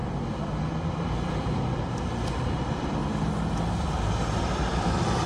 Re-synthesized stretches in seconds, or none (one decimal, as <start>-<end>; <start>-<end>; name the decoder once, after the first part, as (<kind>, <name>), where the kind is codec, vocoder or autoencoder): 2.3-3.0 (vocoder, BigVGAN v2); 4.4-5.3